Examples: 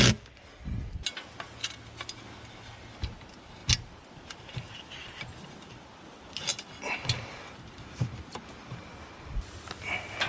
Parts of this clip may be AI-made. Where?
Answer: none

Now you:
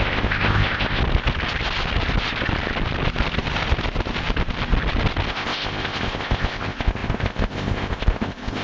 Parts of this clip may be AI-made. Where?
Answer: 0.0-1.0 (codec, ZipCodec); 5.3-8.6

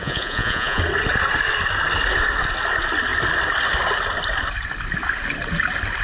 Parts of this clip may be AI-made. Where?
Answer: 0.0-0.8 (vocoder, Vocos)

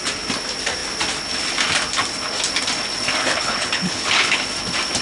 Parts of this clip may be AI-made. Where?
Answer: 3.2-4.4 (codec, HILCodec)

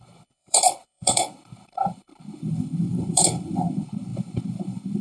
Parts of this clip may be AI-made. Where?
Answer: 0.0-5.0 (codec, HILCodec)